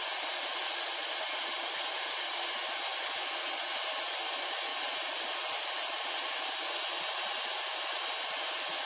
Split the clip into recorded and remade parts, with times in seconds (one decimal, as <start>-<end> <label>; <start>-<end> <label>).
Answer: 0.0-8.9 recorded